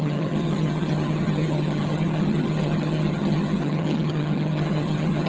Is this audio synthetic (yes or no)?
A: yes